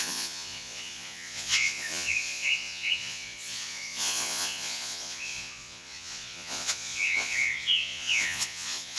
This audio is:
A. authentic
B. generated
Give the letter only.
B